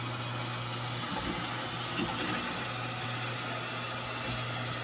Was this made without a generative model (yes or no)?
yes